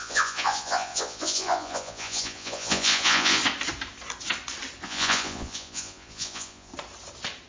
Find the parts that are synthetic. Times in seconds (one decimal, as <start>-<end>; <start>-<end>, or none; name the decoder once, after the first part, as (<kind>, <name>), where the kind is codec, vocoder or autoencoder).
0.0-3.4 (vocoder, Vocos); 4.8-6.7